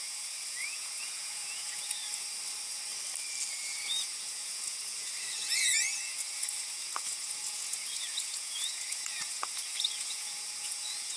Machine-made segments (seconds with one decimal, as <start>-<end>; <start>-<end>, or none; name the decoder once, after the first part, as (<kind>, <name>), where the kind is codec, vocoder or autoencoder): 0.0-2.0 (vocoder, Vocos); 3.5-11.2